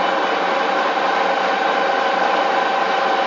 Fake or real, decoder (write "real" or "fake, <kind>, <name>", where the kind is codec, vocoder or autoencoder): real